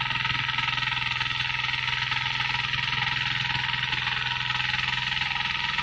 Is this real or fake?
real